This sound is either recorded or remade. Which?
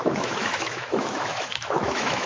remade